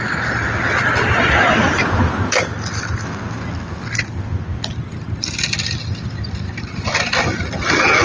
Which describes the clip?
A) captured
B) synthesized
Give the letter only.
A